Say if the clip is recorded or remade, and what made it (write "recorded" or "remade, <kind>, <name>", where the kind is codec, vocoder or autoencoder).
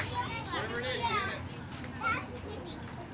recorded